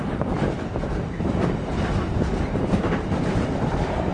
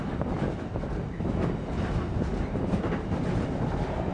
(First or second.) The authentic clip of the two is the second